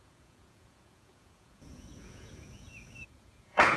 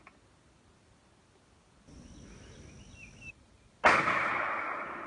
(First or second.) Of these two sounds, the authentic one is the second